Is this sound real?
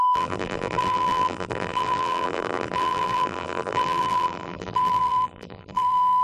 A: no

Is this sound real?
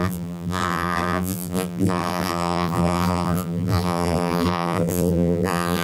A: no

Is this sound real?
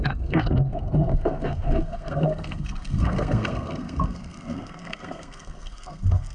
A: no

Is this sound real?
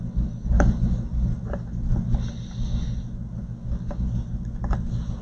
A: yes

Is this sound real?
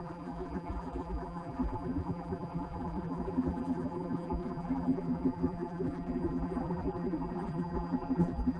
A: no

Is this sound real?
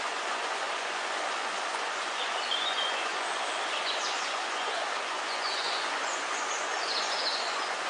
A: no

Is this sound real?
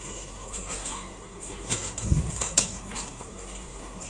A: no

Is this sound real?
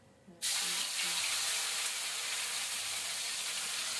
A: yes